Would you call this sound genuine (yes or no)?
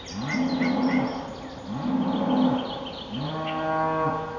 yes